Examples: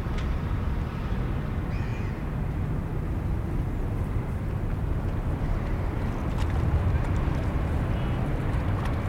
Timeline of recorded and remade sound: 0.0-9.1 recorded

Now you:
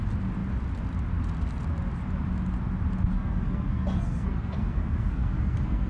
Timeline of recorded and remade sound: 0.0-3.1 recorded; 3.1-5.9 remade

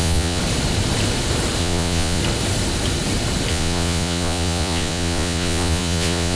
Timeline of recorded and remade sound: 0.0-0.4 remade; 0.4-1.6 recorded; 1.6-2.2 remade; 2.2-3.5 recorded; 3.5-6.4 remade